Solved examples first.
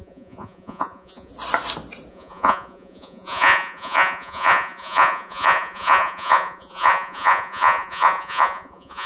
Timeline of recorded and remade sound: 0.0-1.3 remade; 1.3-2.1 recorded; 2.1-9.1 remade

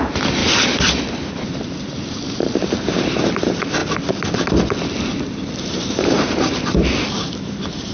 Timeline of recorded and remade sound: 0.0-0.4 remade; 0.4-1.3 recorded; 1.3-3.8 remade; 3.8-5.3 recorded; 5.3-7.9 remade

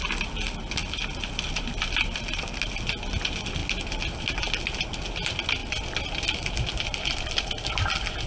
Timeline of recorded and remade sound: 0.0-8.3 recorded

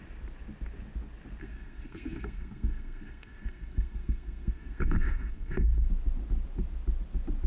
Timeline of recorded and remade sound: 0.0-1.4 recorded; 1.4-5.9 remade; 5.9-7.5 recorded